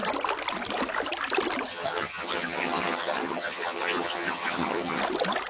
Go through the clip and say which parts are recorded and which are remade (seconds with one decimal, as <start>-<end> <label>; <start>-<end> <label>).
0.0-1.7 recorded; 1.7-5.0 remade; 5.0-5.5 recorded

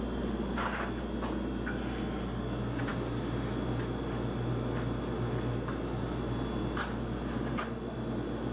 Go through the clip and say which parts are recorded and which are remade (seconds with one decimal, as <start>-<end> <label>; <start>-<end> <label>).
0.0-8.5 recorded

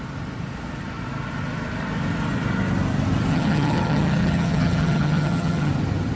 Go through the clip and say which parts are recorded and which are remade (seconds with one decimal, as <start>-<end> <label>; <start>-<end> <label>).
0.0-3.3 recorded; 3.3-5.7 remade; 5.7-6.2 recorded

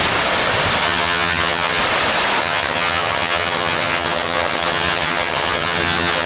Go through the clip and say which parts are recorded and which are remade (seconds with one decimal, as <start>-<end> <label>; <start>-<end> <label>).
0.0-0.8 recorded; 0.8-1.8 remade; 1.8-2.4 recorded; 2.4-6.3 remade

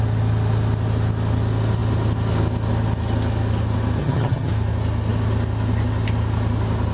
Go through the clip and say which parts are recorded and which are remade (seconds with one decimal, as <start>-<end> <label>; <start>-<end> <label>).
0.0-4.0 recorded; 4.0-4.5 remade; 4.5-6.9 recorded

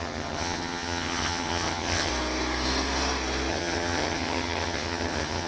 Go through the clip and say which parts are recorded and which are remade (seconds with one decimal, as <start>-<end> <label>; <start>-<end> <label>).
0.0-2.1 remade; 2.1-3.5 recorded; 3.5-5.5 remade